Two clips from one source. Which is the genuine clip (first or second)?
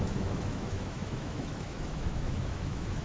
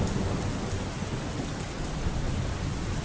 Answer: second